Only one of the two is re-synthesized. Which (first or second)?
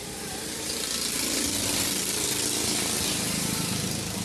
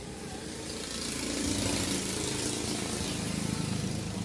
first